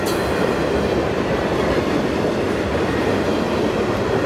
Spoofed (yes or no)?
no